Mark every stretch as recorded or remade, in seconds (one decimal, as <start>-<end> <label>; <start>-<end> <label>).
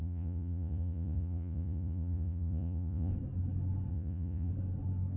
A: 0.0-3.1 remade; 3.1-3.9 recorded; 3.9-4.5 remade; 4.5-5.2 recorded